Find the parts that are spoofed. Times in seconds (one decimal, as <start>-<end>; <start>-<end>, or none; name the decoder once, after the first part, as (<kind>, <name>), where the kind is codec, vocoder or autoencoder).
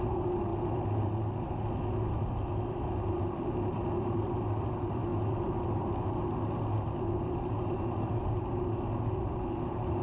none